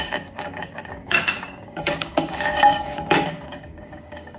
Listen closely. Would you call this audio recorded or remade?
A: remade